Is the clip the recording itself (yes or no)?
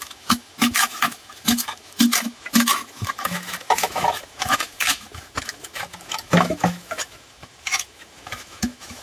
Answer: no